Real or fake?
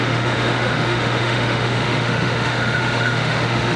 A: fake